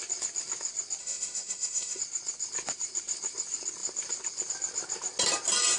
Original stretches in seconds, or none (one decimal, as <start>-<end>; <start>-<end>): 0.0-1.0; 2.0-5.8